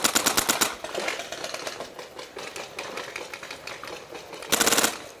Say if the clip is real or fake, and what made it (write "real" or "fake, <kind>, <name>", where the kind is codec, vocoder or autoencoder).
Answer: real